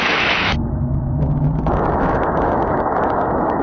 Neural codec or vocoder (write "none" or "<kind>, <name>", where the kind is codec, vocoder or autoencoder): autoencoder, DAC-VAE